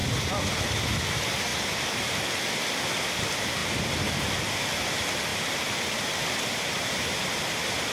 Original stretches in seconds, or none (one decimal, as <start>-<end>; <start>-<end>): 0.0-5.3; 7.2-7.9